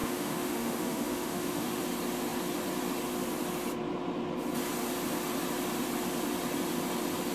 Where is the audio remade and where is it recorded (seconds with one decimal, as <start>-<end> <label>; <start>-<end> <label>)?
0.0-1.8 remade; 1.8-7.3 recorded